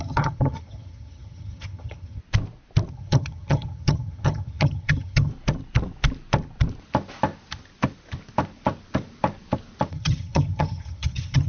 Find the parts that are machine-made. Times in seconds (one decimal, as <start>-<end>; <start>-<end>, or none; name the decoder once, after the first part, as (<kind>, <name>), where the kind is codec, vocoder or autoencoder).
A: 0.0-2.2 (vocoder, HiFi-GAN); 2.9-5.3; 9.9-11.5